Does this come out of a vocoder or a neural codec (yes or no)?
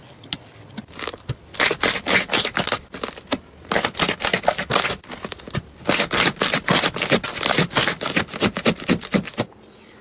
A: no